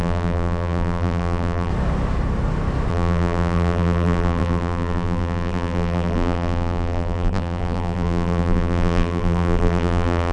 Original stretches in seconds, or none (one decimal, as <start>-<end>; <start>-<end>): 1.7-2.9

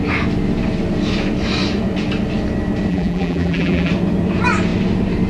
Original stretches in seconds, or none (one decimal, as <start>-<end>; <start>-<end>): 0.0-2.9; 3.9-5.3